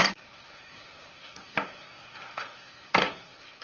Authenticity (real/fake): fake